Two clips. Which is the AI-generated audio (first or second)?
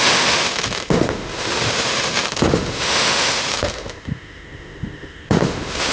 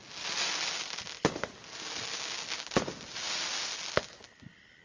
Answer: first